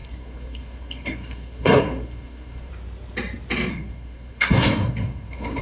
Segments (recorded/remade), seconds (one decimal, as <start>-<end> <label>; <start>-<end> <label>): 0.0-2.7 remade; 2.7-3.7 recorded; 3.7-5.6 remade